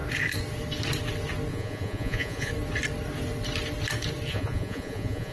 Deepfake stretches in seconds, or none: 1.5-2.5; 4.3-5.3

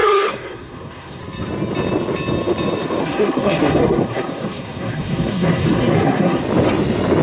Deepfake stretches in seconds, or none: 0.0-1.2; 3.0-6.4

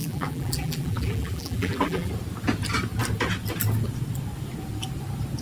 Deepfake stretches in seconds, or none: 0.0-2.1

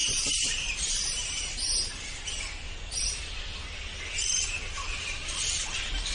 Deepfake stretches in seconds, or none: 0.0-2.2; 4.2-6.1

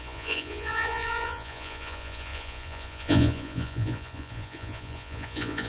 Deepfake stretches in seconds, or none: 0.0-5.7

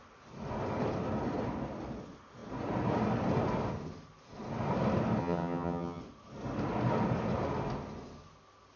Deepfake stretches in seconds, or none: 5.2-6.0